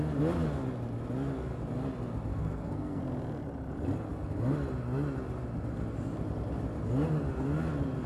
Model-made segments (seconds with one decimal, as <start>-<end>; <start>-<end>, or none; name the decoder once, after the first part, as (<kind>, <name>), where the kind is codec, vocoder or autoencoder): 2.3-3.0 (codec, SNAC)